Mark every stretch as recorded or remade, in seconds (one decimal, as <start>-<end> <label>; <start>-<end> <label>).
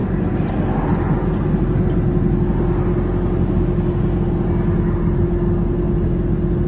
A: 0.0-6.7 recorded